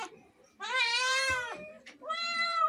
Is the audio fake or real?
fake